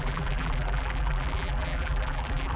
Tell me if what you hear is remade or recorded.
remade